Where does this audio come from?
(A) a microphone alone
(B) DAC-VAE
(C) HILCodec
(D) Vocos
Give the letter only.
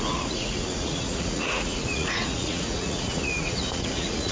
D